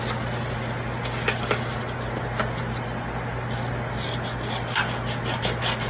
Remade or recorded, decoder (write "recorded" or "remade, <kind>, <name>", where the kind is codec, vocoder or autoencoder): recorded